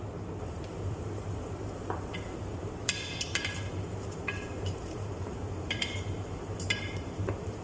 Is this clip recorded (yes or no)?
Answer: no